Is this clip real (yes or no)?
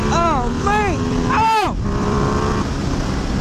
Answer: no